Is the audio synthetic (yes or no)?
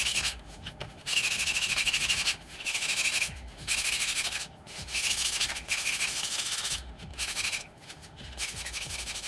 yes